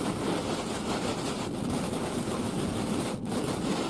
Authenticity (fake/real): real